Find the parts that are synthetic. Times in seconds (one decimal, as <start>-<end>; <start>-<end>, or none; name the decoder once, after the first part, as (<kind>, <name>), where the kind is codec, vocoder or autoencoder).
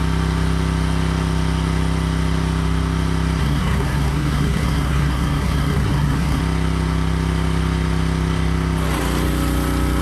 3.4-6.4 (codec, SNAC)